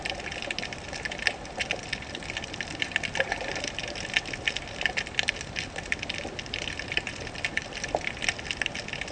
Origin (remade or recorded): recorded